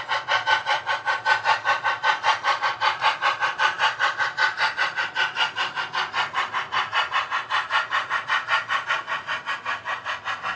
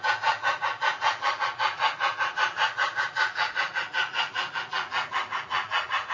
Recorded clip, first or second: first